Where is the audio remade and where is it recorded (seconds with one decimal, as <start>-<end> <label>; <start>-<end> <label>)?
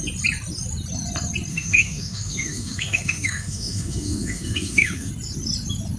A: 0.0-1.5 recorded; 1.5-5.1 remade; 5.1-6.0 recorded